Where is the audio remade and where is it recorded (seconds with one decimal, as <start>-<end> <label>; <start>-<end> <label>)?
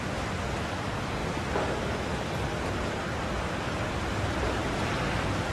0.0-1.2 remade; 1.2-2.6 recorded; 2.6-4.6 remade; 4.6-5.5 recorded